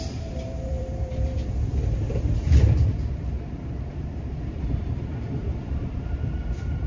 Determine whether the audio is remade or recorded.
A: remade